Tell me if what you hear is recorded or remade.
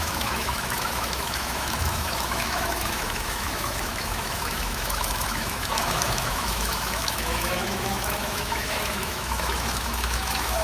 remade